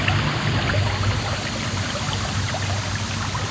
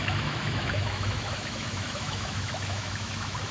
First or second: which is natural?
first